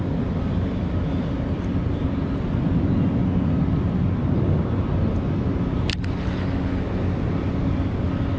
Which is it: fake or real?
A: real